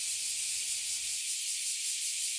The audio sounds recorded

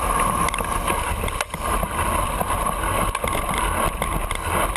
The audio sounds recorded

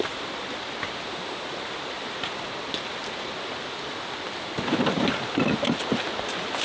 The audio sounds remade